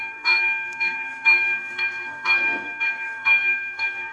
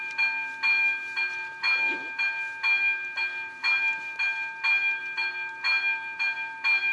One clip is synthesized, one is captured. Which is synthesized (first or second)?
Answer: first